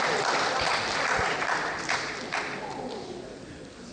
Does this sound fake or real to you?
fake